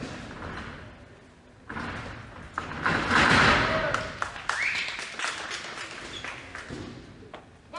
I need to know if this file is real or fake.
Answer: real